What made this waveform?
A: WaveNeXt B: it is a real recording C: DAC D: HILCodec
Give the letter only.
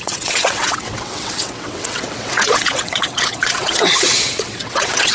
A